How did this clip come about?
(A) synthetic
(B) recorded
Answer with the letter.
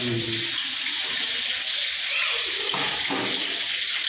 B